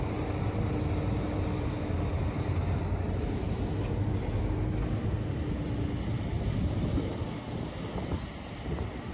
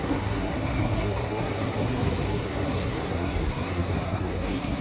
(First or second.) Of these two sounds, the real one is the first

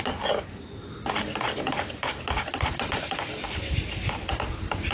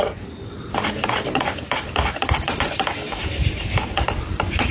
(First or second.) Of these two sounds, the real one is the first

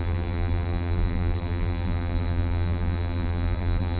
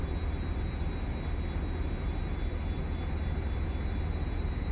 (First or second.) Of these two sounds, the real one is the second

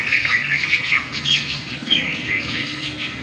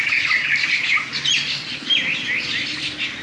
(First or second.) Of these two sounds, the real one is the second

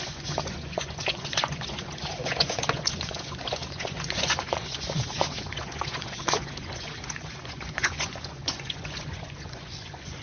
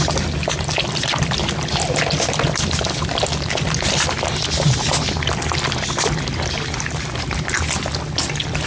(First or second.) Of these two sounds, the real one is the second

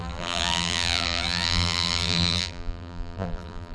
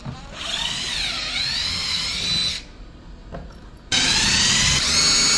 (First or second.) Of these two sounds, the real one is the second